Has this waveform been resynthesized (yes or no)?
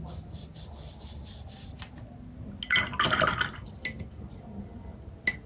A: no